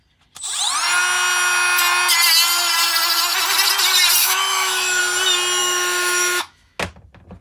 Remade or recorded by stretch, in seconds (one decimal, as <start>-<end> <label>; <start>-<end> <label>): 0.0-4.2 recorded; 4.2-5.0 remade; 5.0-5.6 recorded; 5.6-6.8 remade; 6.8-7.4 recorded